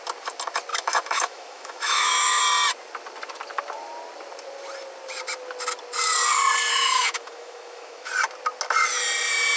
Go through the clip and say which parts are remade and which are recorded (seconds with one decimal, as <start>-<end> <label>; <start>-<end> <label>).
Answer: 0.0-0.7 recorded; 0.7-2.4 remade; 2.4-6.7 recorded; 6.7-8.1 remade; 8.1-9.6 recorded